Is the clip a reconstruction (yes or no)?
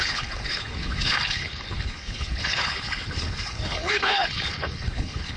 yes